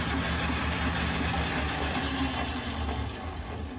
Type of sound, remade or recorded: recorded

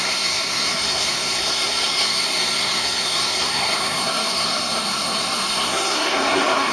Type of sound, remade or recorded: remade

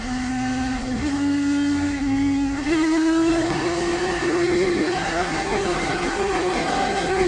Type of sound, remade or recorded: remade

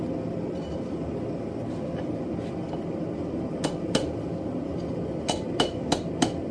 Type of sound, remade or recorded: recorded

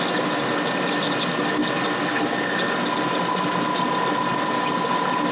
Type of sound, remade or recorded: recorded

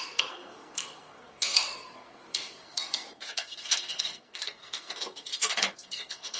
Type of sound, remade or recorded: remade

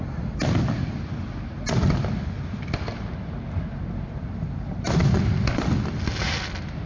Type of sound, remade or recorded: recorded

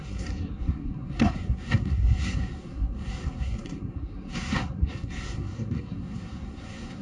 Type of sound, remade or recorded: remade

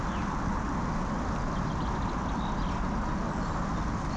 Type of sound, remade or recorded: recorded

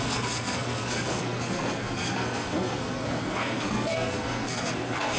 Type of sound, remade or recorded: remade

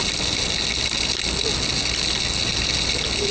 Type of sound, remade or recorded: recorded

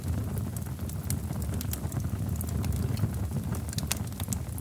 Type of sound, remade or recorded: recorded